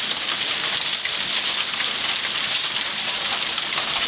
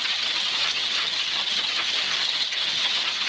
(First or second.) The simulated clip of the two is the second